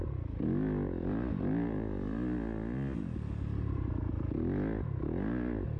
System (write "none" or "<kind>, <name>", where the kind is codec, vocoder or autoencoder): none